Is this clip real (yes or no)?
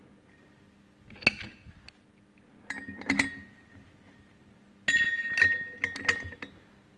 yes